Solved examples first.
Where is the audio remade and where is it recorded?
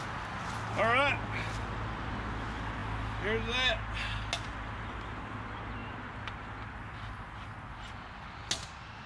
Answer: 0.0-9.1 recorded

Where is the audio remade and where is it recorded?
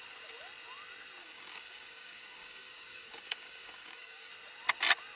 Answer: 0.0-1.2 recorded; 1.2-4.3 remade; 4.3-5.2 recorded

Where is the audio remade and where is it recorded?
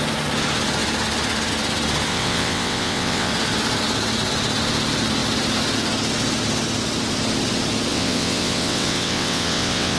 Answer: 0.0-2.1 recorded; 2.1-3.3 remade; 3.3-7.9 recorded; 7.9-10.0 remade